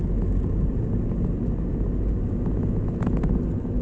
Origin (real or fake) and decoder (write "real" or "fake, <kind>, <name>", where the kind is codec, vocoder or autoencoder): real